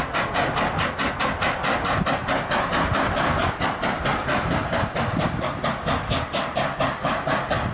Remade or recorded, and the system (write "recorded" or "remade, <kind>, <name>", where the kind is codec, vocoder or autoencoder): recorded